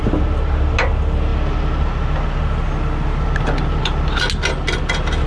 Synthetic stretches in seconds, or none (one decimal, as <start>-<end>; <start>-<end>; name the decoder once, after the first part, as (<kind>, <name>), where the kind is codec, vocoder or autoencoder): none